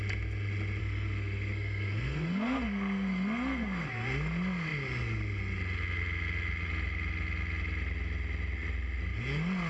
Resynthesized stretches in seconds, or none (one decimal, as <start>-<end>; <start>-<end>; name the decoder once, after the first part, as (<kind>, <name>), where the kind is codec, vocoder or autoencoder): 0.8-3.9 (codec, SNAC)